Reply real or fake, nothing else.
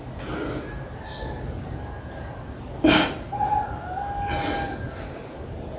real